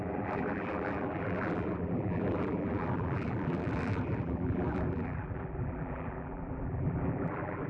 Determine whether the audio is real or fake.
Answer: fake